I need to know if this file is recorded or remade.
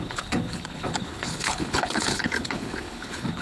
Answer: remade